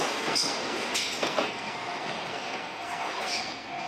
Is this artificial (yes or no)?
yes